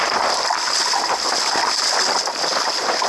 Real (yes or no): yes